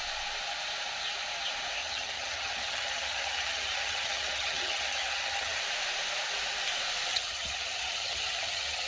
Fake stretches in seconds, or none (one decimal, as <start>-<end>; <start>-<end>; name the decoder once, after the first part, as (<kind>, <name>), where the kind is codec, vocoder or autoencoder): 1.8-5.6 (vocoder, HiFi-GAN); 7.1-8.9